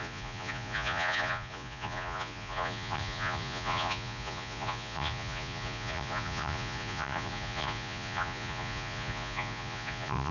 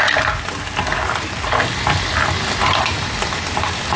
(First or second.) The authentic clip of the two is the second